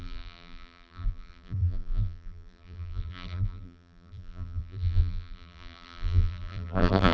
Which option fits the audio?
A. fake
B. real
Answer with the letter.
A